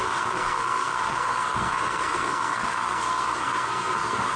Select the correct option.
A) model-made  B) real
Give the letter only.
A